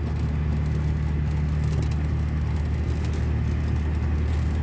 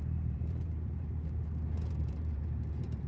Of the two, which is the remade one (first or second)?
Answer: second